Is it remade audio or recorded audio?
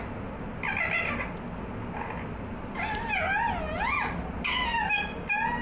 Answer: recorded